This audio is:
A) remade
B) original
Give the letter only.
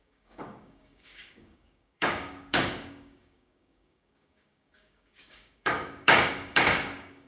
A